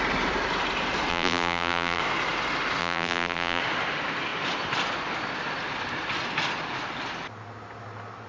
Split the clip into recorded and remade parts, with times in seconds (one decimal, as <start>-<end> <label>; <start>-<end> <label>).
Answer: 0.0-1.1 recorded; 1.1-2.0 remade; 2.0-2.8 recorded; 2.8-3.6 remade; 3.6-8.3 recorded